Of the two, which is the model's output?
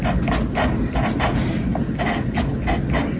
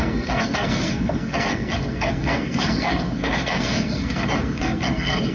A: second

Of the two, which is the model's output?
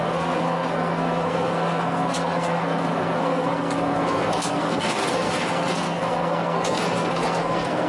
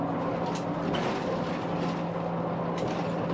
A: first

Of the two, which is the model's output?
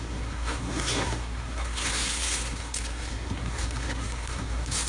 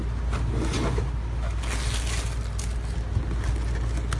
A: first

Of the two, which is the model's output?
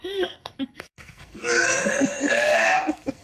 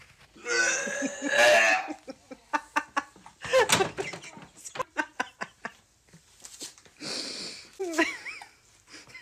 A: first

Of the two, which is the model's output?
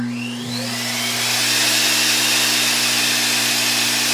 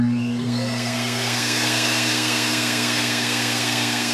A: second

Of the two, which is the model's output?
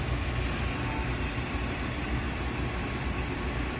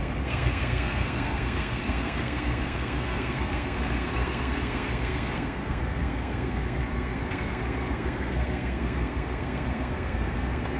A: second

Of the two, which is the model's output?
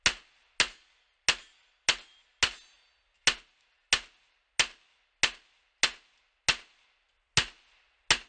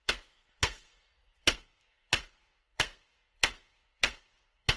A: second